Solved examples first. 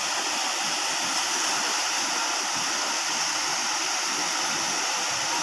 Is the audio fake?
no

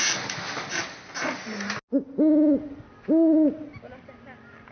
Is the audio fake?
no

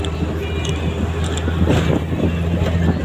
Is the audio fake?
no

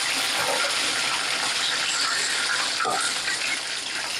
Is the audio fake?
no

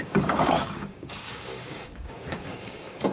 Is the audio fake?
yes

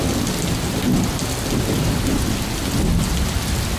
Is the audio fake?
no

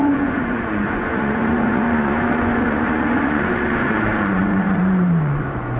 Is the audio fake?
yes